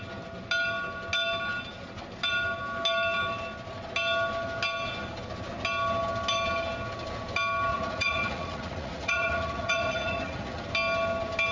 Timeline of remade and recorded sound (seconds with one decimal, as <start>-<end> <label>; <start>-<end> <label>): 0.0-7.7 recorded; 7.7-10.6 remade; 10.6-11.5 recorded